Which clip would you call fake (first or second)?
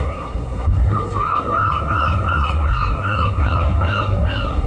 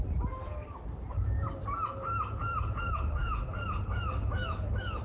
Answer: first